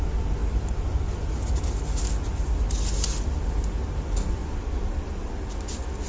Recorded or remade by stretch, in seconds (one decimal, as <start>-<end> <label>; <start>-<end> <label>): 0.0-6.1 recorded